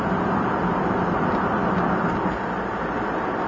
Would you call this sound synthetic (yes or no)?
no